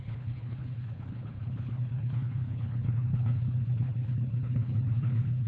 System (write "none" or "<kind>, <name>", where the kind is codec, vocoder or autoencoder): codec, HILCodec